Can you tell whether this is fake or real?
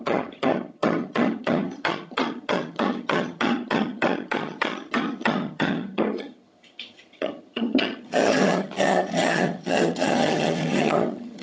fake